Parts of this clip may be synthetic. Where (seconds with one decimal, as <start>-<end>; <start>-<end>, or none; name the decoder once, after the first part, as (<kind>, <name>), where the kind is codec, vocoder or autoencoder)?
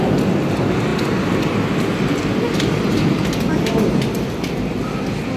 none